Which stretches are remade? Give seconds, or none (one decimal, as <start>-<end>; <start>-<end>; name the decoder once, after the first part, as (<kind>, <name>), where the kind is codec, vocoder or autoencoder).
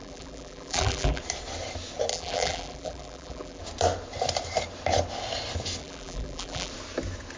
0.0-1.2 (vocoder, BigVGAN v2); 2.1-3.6; 5.8-6.7